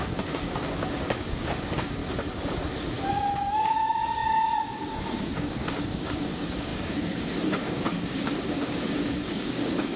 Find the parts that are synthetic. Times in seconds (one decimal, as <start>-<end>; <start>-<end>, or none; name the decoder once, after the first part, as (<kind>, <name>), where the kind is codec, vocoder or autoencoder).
0.0-2.0 (codec, DAC); 3.1-10.0